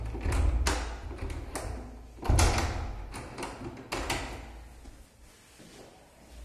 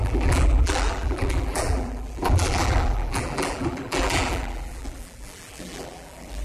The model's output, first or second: second